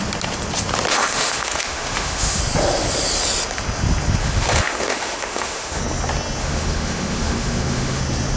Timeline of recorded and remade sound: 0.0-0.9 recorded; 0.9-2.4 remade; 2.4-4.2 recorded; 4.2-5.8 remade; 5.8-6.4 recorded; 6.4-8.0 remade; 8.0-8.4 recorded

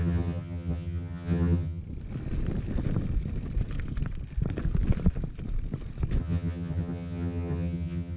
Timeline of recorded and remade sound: 0.0-1.8 remade; 1.8-6.2 recorded; 6.2-8.2 remade

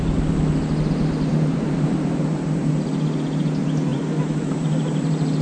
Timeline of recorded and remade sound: 0.0-1.3 recorded; 1.3-2.7 remade; 2.7-3.9 recorded; 3.9-5.4 remade